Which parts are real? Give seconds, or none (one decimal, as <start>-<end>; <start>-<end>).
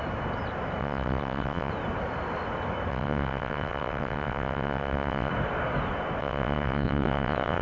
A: 0.0-0.8; 1.7-2.9; 5.3-6.2